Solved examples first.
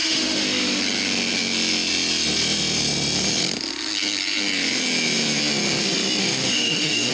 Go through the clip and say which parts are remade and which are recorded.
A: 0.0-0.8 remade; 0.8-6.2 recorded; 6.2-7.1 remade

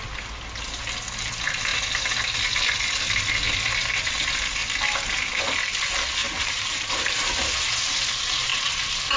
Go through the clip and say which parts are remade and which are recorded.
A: 0.0-6.2 recorded; 6.2-7.7 remade; 7.7-8.5 recorded; 8.5-9.2 remade

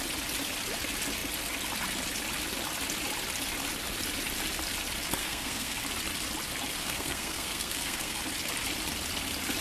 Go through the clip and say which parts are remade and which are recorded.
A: 0.0-5.2 recorded; 5.2-5.8 remade; 5.8-6.8 recorded; 6.8-8.2 remade; 8.2-9.6 recorded

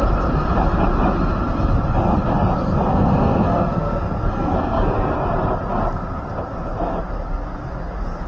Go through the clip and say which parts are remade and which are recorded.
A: 0.0-2.9 recorded; 2.9-5.1 remade; 5.1-8.3 recorded

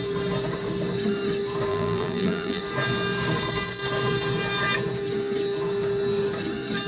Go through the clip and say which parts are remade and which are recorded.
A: 0.0-1.7 recorded; 1.7-2.6 remade; 2.6-6.9 recorded

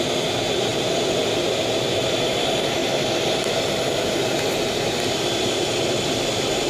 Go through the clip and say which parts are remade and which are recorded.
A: 0.0-6.7 recorded

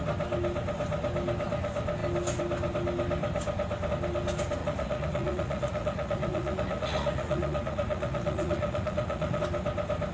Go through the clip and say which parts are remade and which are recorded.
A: 0.0-4.6 recorded; 4.6-9.4 remade; 9.4-10.1 recorded

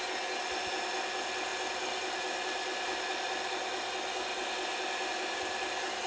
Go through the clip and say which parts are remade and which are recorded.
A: 0.0-6.1 recorded